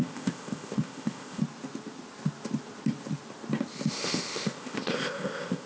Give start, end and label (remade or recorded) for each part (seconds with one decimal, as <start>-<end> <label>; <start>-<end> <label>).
0.0-1.4 remade; 1.4-3.9 recorded; 3.9-5.7 remade